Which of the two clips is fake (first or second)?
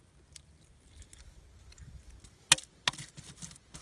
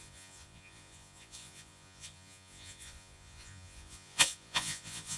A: second